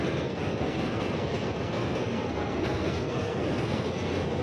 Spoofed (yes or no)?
yes